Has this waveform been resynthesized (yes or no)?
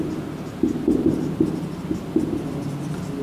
no